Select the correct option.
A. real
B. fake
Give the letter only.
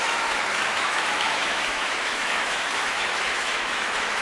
B